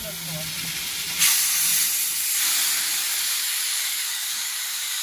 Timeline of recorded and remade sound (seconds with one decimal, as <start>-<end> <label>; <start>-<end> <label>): 0.0-3.0 recorded; 3.0-5.0 remade